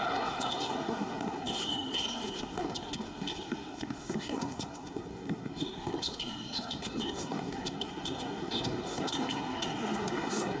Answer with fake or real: fake